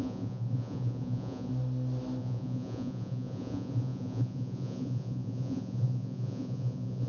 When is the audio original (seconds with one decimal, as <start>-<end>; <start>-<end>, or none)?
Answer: 1.5-2.2